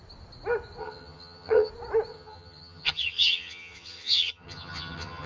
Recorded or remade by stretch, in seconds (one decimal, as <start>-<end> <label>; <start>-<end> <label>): 0.0-0.8 recorded; 0.8-1.7 remade; 1.7-2.1 recorded; 2.1-5.3 remade